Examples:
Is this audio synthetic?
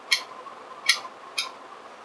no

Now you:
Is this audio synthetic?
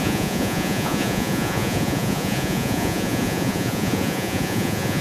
yes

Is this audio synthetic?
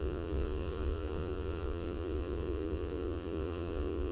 yes